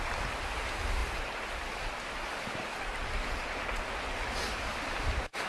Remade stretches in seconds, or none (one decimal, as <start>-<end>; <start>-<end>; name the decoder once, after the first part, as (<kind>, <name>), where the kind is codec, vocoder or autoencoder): none